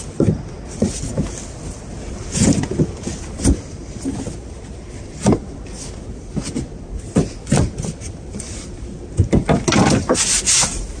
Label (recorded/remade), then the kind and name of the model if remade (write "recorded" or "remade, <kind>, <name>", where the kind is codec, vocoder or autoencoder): recorded